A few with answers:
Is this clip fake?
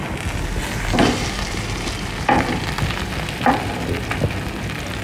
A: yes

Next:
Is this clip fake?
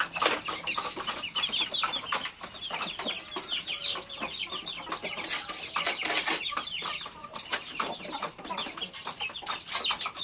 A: no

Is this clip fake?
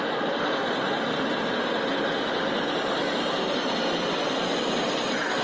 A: no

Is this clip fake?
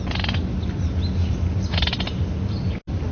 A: no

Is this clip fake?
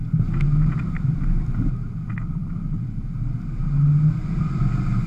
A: no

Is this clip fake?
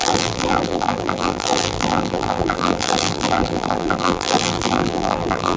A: yes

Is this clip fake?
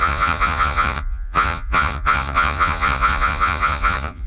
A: yes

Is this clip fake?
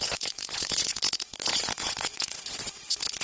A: yes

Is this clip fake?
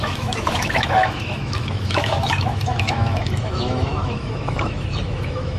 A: yes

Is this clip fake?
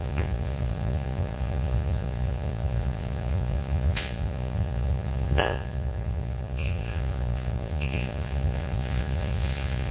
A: yes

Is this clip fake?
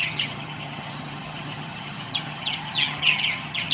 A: yes